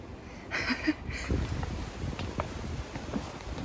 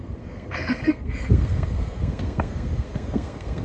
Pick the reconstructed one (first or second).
second